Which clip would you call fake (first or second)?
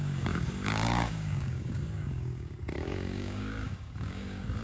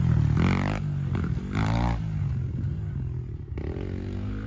first